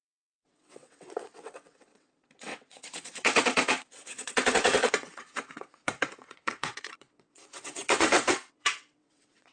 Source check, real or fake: fake